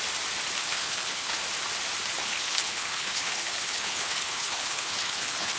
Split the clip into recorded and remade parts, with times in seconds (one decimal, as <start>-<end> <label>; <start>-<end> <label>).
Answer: 0.0-0.6 recorded; 0.6-1.4 remade; 1.4-2.2 recorded; 2.2-5.6 remade